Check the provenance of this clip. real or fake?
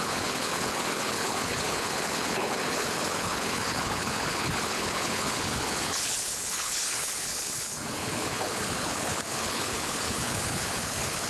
fake